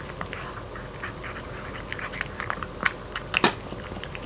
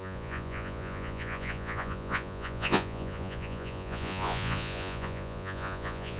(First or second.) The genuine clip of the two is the first